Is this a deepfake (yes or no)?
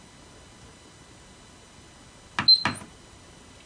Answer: no